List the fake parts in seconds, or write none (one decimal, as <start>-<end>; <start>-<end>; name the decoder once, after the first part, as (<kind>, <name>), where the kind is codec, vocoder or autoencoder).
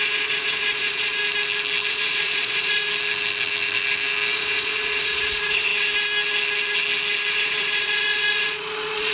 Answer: 0.0-1.2 (vocoder, Vocos); 1.9-2.8; 4.3-5.7; 7.3-9.1